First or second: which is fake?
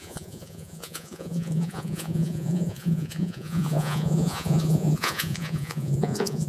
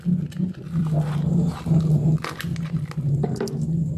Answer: first